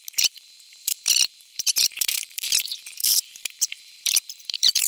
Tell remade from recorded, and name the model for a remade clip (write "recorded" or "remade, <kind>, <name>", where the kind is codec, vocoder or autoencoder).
remade, vocoder, BigVGAN v2